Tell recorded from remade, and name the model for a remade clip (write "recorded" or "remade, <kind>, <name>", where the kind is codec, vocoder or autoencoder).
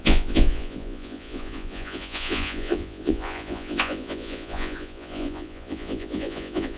remade, vocoder, Vocos